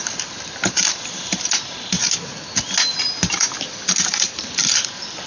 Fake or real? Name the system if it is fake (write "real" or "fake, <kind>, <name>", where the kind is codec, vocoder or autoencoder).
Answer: real